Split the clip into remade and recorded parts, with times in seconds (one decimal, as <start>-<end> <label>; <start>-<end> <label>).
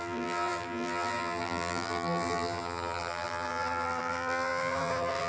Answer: 0.0-5.3 remade